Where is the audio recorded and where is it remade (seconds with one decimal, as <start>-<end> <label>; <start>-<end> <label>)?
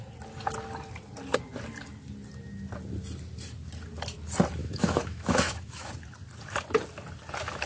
0.0-4.6 recorded; 4.6-5.9 remade; 5.9-7.7 recorded